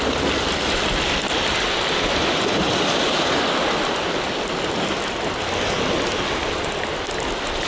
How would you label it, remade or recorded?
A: recorded